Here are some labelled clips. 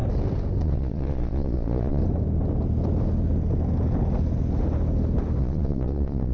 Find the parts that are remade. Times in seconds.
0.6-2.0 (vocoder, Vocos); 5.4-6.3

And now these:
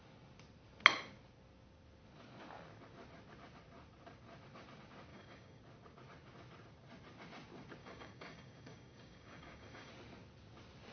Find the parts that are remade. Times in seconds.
5.1-5.6 (codec, DAC); 7.8-9.9

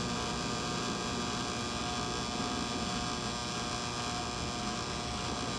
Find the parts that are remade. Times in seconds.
none

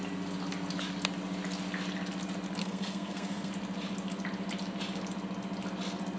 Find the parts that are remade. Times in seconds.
2.6-3.5 (codec, SNAC)

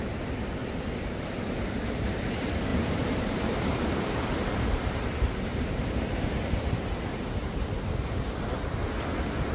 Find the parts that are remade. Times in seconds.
2.7-5.1 (vocoder, BigVGAN v2); 5.5-8.4

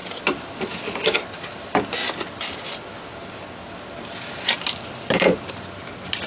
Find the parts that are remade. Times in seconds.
none

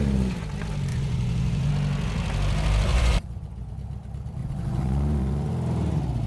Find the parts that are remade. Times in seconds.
0.9-1.7 (vocoder, Vocos); 2.9-3.7; 4.4-5.5